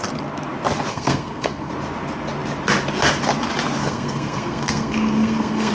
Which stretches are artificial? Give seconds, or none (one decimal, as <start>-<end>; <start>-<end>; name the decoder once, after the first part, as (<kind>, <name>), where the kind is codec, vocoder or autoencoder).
0.9-1.7 (codec, SNAC); 3.8-5.7